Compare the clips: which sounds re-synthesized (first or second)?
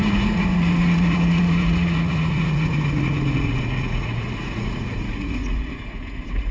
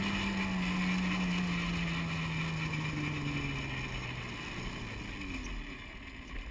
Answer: first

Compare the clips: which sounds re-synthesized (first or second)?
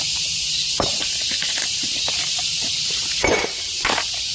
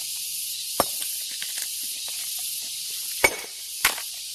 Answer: second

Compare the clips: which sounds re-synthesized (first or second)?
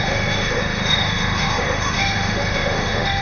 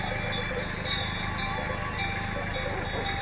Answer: first